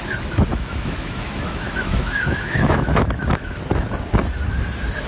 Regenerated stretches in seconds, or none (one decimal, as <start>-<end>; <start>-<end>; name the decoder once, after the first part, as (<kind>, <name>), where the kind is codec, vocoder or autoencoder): 0.5-3.6 (autoencoder, DAC-VAE)